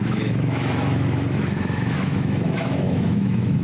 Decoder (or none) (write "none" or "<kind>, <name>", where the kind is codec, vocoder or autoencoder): autoencoder, DAC-VAE